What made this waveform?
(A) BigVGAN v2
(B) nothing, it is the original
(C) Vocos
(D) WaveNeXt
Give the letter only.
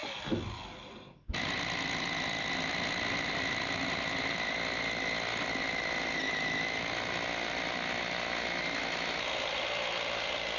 B